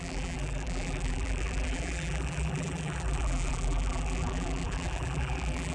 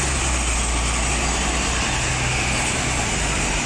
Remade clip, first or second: first